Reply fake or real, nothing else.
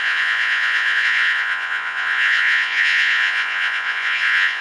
fake